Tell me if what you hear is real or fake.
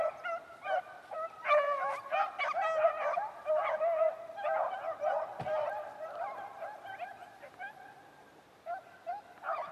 real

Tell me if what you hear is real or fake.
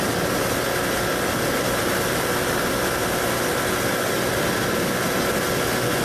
real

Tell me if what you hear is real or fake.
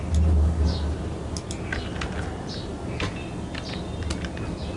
real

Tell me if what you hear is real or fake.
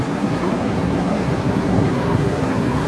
fake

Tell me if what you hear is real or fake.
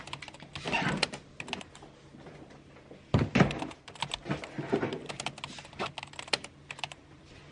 fake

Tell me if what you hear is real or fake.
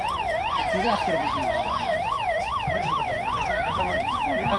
fake